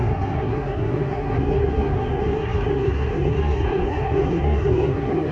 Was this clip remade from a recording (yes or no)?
yes